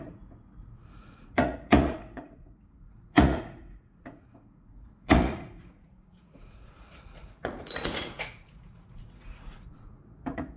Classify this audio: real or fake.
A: fake